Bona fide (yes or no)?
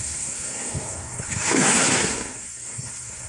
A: no